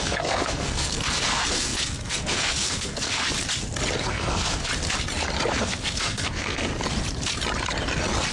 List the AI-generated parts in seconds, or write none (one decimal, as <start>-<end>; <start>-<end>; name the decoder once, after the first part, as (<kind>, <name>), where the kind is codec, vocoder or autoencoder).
0.0-3.2 (codec, SNAC); 4.0-4.7; 5.6-6.7